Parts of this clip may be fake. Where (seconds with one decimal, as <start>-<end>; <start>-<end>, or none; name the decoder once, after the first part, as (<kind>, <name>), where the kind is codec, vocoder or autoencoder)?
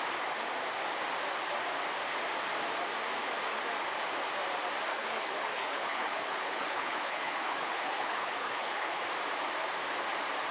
4.9-9.0 (codec, HILCodec)